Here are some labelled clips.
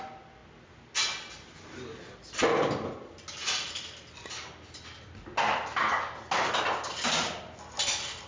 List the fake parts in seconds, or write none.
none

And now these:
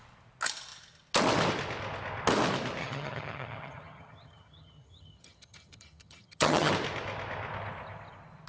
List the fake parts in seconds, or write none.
2.8-6.7 (vocoder, HiFi-GAN)

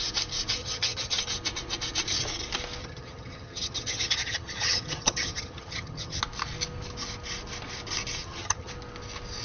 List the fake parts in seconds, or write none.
0.6-1.2 (vocoder, HiFi-GAN); 2.8-6.2; 8.2-8.7